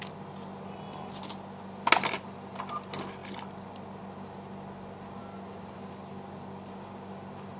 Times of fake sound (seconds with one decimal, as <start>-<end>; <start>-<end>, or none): none